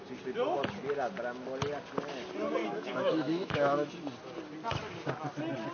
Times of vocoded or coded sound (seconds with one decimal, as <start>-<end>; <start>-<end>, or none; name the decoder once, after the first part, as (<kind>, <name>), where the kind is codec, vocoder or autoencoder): 2.6-3.9 (autoencoder, DAC-VAE)

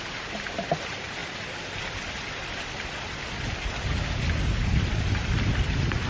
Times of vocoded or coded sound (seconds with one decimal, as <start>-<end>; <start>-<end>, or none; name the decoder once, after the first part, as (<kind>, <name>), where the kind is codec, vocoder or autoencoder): none

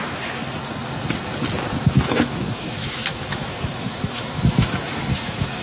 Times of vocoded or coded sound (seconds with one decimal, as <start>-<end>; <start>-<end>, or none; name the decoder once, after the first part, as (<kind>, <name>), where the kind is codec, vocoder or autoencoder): 0.0-0.4 (autoencoder, DAC-VAE); 1.9-5.6

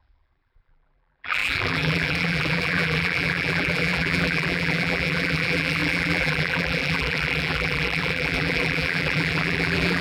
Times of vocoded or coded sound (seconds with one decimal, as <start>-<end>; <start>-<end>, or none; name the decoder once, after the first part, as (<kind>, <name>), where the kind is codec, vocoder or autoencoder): 0.0-10.0 (vocoder, BigVGAN v2)